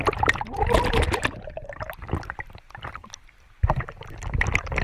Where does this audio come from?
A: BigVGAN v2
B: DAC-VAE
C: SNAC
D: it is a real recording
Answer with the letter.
A